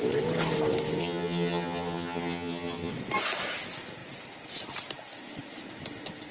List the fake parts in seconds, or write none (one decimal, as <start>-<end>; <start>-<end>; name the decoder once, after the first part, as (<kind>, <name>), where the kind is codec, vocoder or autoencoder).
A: 1.0-2.9 (vocoder, HiFi-GAN)